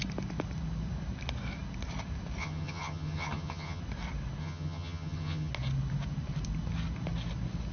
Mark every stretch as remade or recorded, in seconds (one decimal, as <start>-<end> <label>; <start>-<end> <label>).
0.0-2.4 recorded; 2.4-3.8 remade; 3.8-4.4 recorded; 4.4-5.5 remade; 5.5-7.7 recorded

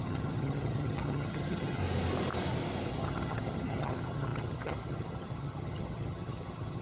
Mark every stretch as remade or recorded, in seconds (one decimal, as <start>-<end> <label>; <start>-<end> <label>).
0.0-1.8 remade; 1.8-2.9 recorded; 2.9-6.8 remade

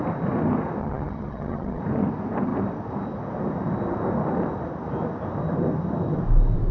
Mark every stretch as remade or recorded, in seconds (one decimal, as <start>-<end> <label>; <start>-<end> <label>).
0.0-0.8 recorded; 0.8-1.8 remade; 1.8-6.7 recorded

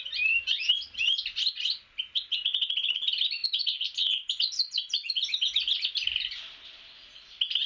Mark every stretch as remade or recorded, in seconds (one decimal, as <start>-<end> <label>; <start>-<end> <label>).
0.0-7.7 recorded

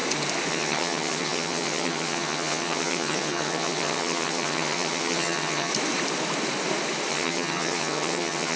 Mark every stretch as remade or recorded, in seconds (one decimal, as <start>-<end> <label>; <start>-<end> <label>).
0.0-0.5 recorded; 0.5-5.7 remade; 5.7-7.1 recorded; 7.1-8.6 remade